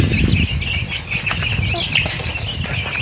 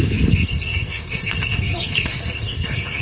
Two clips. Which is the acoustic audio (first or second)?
first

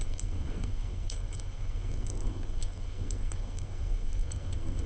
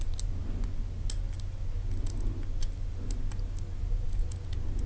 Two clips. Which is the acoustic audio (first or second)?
second